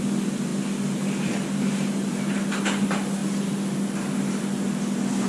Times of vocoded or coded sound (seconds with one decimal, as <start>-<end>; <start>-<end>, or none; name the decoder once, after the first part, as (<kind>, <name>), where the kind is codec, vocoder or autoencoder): none